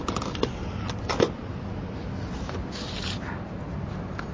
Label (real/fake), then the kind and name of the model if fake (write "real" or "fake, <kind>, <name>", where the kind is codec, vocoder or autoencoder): real